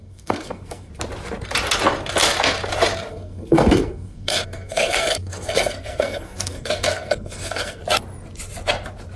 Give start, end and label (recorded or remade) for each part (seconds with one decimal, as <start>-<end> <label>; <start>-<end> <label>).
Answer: 0.0-0.9 remade; 0.9-3.1 recorded; 3.1-7.8 remade; 7.8-9.2 recorded